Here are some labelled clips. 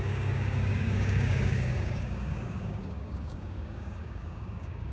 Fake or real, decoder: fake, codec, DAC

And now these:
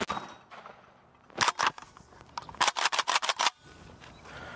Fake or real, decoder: real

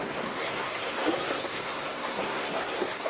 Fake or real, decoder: fake, codec, SNAC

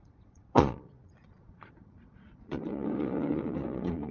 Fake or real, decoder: fake, vocoder, Vocos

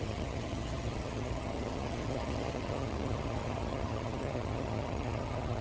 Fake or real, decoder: fake, vocoder, HiFi-GAN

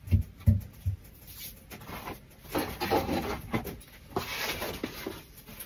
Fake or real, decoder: real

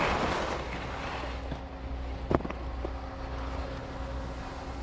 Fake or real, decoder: real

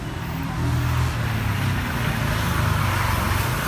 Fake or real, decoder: real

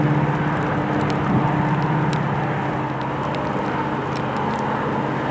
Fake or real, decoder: real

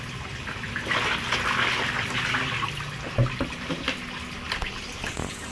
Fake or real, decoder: real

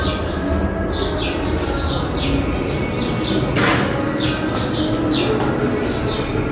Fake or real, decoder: real